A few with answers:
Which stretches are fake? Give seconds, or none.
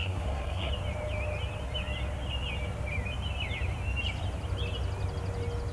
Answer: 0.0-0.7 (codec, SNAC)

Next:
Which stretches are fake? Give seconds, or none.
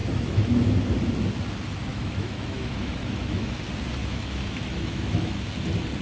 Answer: 0.0-0.6 (autoencoder, DAC-VAE); 1.9-3.6; 4.0-5.4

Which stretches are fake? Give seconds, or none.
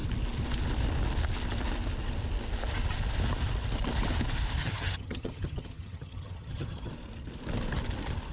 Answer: 4.6-6.9 (vocoder, HiFi-GAN)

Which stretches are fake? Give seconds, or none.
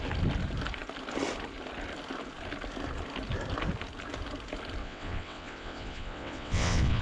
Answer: 4.8-7.0 (vocoder, WaveNeXt)